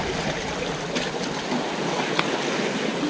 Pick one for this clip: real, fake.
real